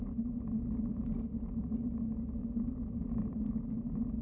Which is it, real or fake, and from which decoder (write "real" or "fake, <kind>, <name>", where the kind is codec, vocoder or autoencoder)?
real